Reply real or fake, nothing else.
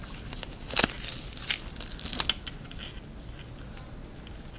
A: real